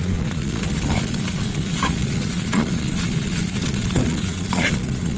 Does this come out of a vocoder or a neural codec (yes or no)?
yes